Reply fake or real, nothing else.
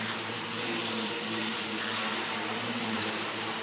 fake